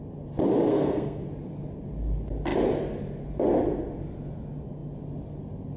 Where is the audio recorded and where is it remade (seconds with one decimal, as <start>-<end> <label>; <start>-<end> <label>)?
0.0-0.7 recorded; 0.7-1.2 remade; 1.2-5.8 recorded